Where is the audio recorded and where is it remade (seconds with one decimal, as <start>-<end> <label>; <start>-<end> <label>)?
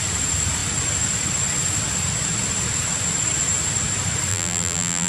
0.0-4.3 recorded; 4.3-5.1 remade